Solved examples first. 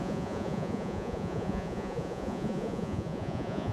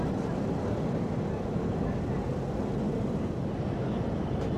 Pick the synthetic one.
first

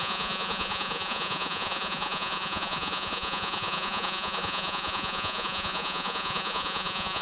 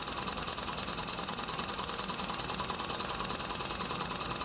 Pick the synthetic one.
first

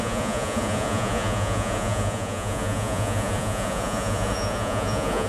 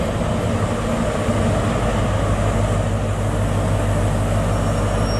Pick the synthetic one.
first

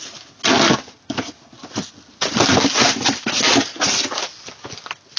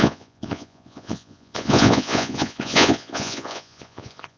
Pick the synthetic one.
second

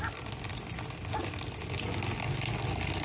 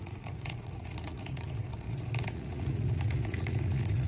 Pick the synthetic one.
second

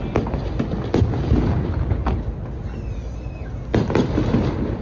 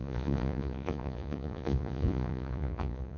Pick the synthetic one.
second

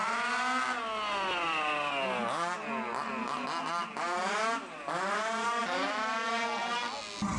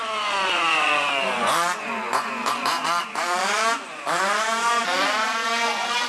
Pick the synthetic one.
second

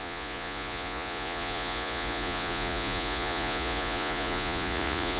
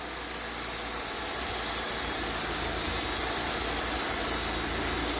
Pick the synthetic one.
first